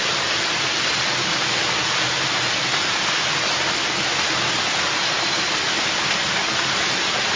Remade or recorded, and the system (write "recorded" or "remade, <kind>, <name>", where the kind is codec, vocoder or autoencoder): recorded